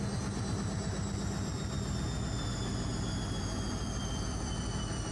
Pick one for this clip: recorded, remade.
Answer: recorded